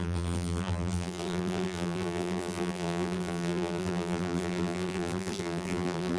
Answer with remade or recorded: remade